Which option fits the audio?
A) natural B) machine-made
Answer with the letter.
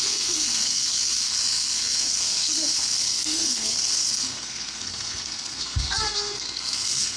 B